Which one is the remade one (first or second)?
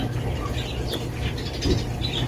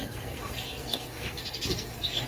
second